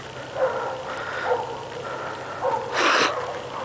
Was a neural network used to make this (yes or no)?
no